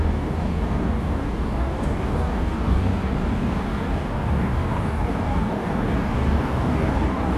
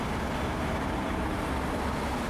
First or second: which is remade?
first